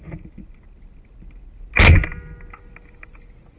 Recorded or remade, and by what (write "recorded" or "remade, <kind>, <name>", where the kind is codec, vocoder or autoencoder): recorded